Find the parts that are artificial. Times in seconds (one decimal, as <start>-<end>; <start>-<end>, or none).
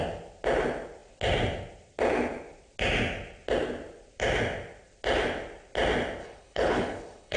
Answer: 6.2-7.4